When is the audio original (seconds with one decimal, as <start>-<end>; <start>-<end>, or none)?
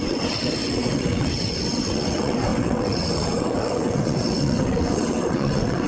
none